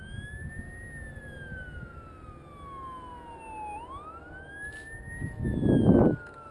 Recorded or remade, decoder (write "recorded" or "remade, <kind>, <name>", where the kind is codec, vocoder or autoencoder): recorded